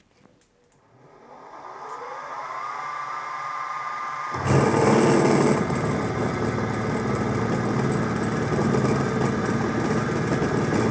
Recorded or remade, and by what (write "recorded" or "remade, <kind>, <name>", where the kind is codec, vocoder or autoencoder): recorded